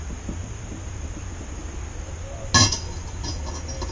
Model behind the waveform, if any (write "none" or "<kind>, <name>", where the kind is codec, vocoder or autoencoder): none